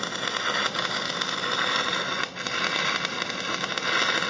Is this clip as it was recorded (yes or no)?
yes